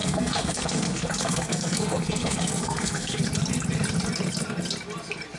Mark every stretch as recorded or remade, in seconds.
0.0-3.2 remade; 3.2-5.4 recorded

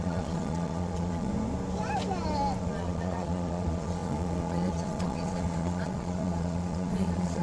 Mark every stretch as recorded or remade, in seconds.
0.0-1.3 remade; 1.3-2.6 recorded; 2.6-7.4 remade